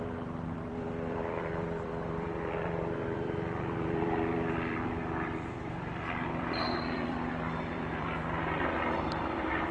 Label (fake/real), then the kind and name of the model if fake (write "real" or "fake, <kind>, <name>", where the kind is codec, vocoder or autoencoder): fake, vocoder, BigVGAN v2